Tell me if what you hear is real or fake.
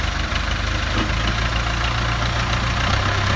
real